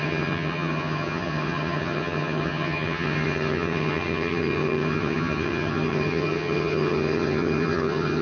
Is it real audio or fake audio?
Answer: fake